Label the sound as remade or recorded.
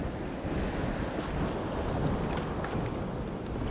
recorded